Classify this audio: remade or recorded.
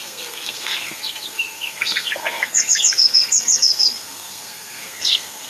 remade